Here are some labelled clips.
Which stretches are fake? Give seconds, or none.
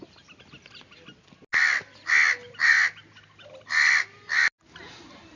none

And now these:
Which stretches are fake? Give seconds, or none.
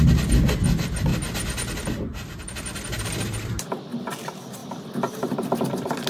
none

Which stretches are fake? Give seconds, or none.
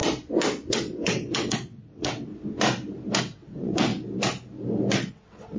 0.7-2.3 (vocoder, WaveNeXt); 3.2-3.9; 5.1-5.6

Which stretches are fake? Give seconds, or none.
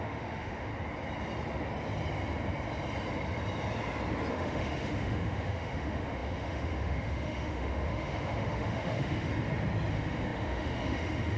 0.0-0.7 (autoencoder, DAC-VAE); 4.3-9.3; 9.9-11.4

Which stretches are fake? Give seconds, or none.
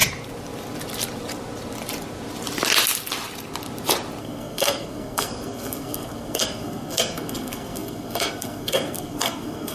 4.2-9.7 (codec, SNAC)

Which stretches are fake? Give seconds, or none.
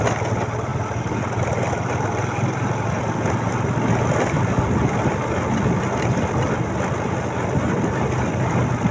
none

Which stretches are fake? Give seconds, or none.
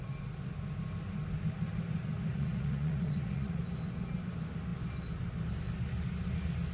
2.3-3.6 (vocoder, Vocos)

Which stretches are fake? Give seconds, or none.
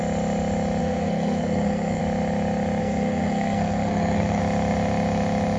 0.8-2.0 (codec, SNAC); 2.8-4.4